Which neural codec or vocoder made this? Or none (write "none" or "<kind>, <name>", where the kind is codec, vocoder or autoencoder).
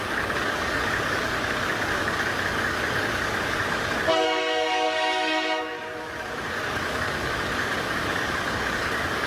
codec, DAC